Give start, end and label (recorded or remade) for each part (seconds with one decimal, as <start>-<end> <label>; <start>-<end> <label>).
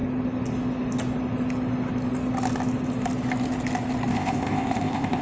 0.0-4.1 recorded; 4.1-5.2 remade